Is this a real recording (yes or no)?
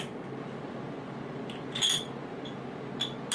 yes